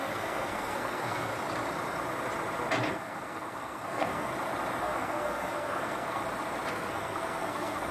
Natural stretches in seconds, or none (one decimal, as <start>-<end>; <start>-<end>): 1.3-2.9; 4.3-4.8; 6.2-6.7